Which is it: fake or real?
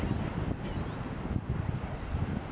real